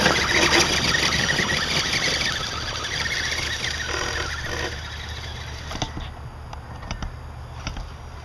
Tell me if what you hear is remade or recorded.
recorded